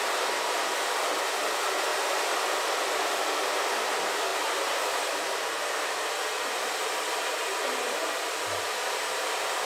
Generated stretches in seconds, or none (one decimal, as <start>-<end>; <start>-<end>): 4.3-5.4